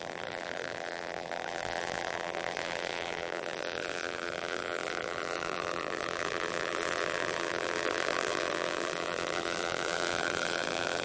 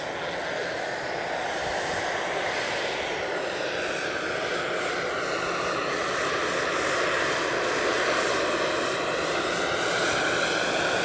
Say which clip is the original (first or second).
second